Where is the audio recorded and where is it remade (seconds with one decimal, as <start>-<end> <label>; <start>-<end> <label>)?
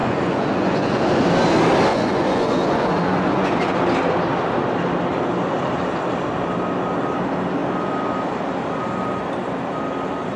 0.0-1.0 remade; 1.0-1.9 recorded; 1.9-3.8 remade; 3.8-10.4 recorded